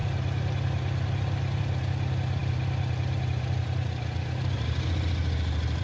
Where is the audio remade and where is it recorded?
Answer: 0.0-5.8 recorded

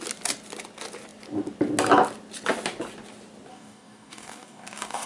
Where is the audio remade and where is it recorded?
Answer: 0.0-3.5 recorded; 3.5-5.1 remade